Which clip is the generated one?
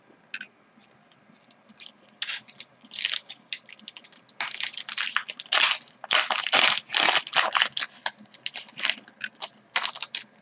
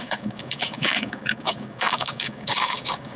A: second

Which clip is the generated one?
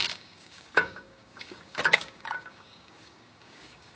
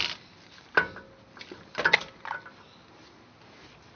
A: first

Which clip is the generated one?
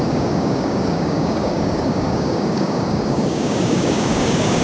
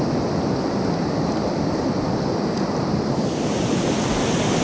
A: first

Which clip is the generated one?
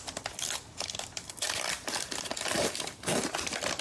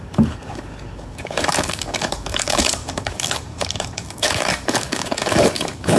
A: second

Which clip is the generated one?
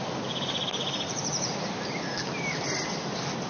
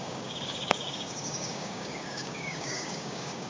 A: second